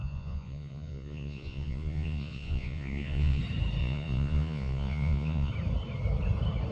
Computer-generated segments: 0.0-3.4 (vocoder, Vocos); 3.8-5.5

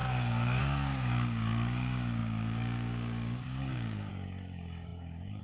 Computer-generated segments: 0.0-5.4 (codec, DAC)

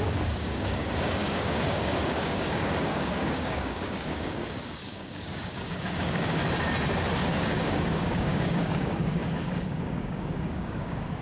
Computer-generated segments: 0.0-6.4 (codec, DAC); 7.4-11.2